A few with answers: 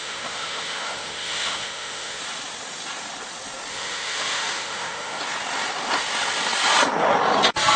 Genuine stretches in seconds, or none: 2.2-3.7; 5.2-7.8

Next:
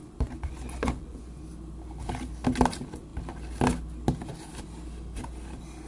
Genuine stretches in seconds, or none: 1.4-5.9